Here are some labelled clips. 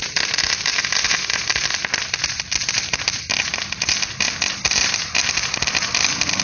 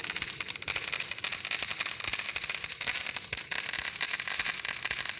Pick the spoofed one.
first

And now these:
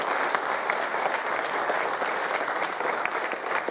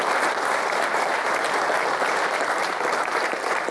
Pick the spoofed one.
second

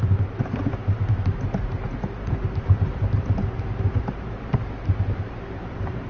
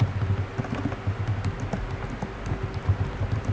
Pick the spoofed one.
first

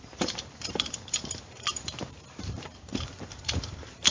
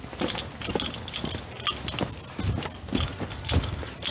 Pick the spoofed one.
first